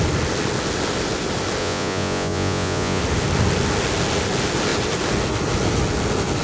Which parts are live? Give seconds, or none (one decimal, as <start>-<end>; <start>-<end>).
0.0-1.6; 3.0-6.4